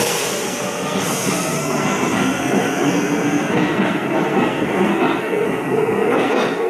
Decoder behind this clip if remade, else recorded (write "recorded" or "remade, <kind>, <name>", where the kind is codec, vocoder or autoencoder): remade, codec, SNAC